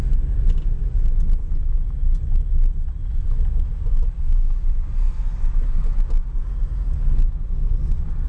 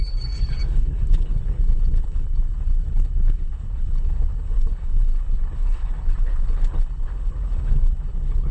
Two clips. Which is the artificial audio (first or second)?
second